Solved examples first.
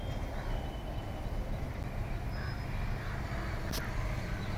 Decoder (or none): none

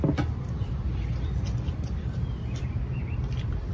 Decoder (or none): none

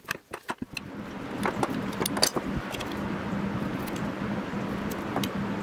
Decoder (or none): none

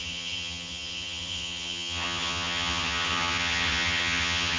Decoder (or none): vocoder, HiFi-GAN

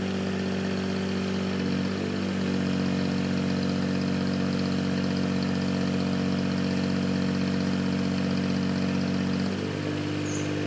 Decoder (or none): none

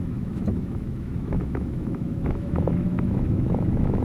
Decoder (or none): autoencoder, DAC-VAE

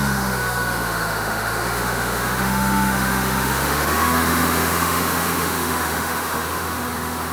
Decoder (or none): autoencoder, DAC-VAE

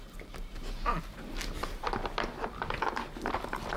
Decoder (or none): none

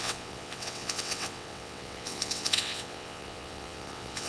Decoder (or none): vocoder, WaveNeXt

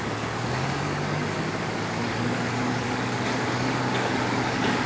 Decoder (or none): codec, DAC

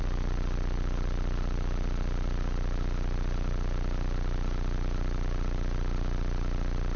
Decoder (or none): none